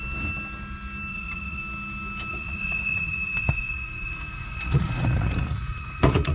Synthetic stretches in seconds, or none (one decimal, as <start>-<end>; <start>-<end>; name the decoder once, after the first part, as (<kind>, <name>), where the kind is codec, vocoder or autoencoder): 1.1-1.6 (vocoder, Vocos); 2.3-6.3